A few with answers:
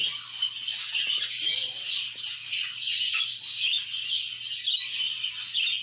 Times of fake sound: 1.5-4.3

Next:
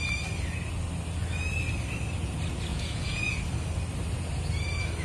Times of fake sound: 2.7-3.3

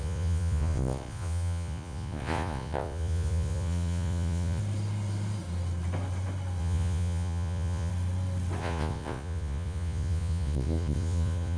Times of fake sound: 0.0-4.6; 6.6-7.9; 8.6-11.6